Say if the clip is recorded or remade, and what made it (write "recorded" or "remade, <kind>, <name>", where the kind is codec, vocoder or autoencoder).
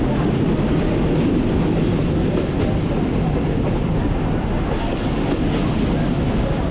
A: recorded